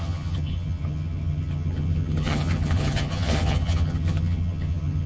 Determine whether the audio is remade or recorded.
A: remade